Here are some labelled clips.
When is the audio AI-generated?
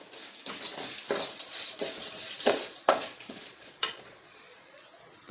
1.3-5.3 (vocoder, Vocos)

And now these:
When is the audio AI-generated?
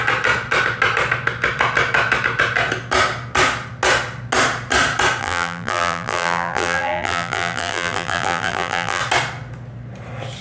5.2-9.0 (vocoder, BigVGAN v2)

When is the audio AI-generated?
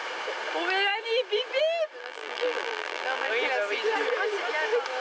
2.0-3.3 (vocoder, BigVGAN v2)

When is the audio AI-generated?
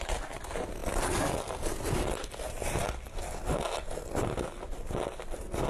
0.8-2.0 (vocoder, BigVGAN v2)